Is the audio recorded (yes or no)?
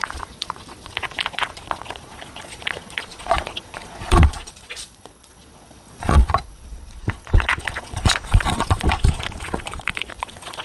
no